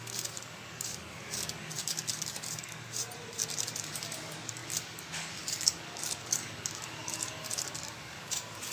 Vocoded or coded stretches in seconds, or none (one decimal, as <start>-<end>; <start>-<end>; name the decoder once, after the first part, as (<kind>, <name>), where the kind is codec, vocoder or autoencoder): 0.0-3.0 (codec, DAC); 3.8-8.7